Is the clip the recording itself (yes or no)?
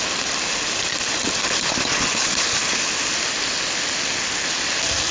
yes